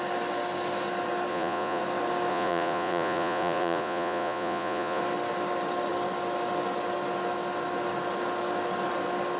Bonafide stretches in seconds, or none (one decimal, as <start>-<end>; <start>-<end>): 0.0-1.3; 1.8-2.3; 5.0-9.4